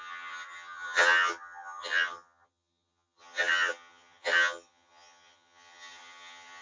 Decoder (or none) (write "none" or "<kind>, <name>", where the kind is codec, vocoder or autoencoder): vocoder, HiFi-GAN